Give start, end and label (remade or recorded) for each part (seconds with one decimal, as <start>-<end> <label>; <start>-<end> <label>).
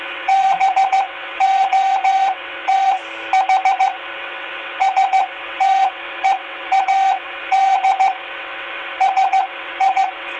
0.0-3.0 remade; 3.0-3.7 recorded; 3.7-10.4 remade